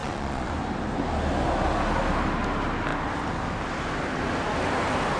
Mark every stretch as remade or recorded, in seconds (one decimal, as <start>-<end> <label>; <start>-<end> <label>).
0.0-0.5 remade; 0.5-5.2 recorded